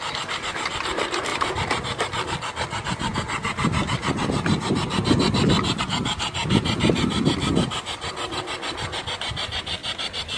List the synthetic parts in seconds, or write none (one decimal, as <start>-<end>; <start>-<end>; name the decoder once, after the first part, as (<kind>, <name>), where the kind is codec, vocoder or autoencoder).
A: 0.0-1.3 (vocoder, BigVGAN v2); 5.8-6.4; 9.0-9.8